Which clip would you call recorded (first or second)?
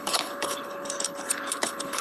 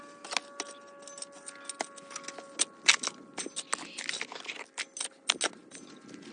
second